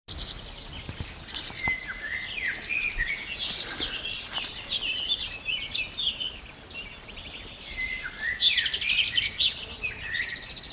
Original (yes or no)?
yes